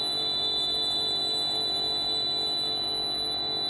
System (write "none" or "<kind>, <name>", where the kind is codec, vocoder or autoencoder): autoencoder, DAC-VAE